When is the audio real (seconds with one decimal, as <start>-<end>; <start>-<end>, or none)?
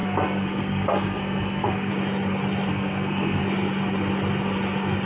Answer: 1.9-2.7; 3.4-5.1